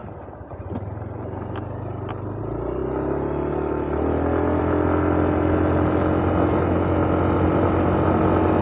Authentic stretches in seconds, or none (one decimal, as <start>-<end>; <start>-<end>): 0.0-8.6